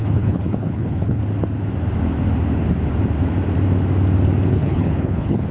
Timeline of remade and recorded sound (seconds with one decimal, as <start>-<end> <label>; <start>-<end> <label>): 0.0-1.2 remade; 1.2-4.5 recorded; 4.5-5.5 remade